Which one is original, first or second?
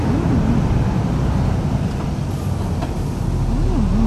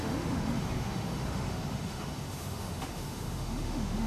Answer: first